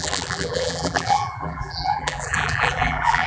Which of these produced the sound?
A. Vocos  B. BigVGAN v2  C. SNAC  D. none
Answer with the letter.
B